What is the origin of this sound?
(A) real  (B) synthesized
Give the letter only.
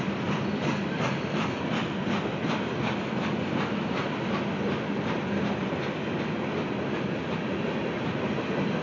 A